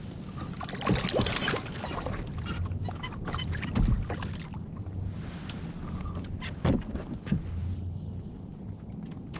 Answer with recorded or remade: recorded